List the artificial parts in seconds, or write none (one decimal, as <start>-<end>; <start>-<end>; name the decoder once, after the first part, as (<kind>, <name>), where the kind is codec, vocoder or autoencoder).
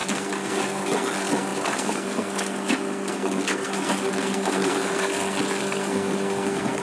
0.0-6.8 (codec, SNAC)